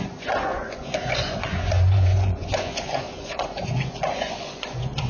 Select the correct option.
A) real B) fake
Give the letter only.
B